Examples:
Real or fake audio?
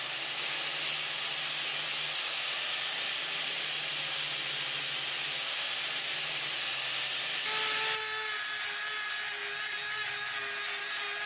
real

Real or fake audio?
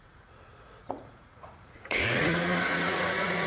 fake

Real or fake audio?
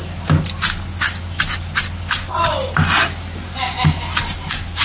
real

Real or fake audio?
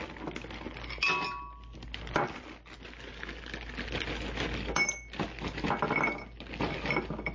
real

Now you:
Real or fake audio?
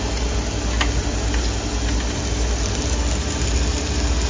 real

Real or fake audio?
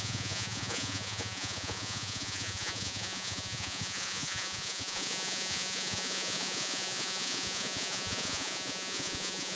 fake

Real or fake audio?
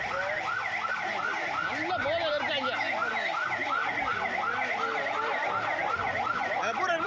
real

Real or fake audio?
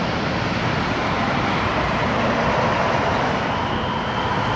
real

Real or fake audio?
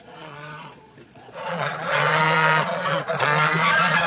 fake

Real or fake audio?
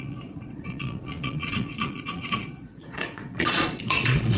fake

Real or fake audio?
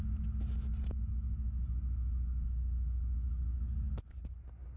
real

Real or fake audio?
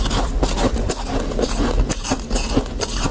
real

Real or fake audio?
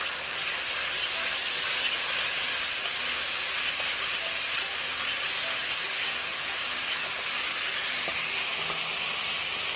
real